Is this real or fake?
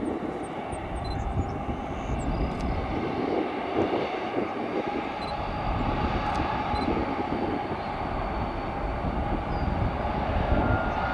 real